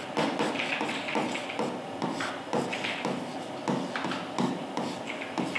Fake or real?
real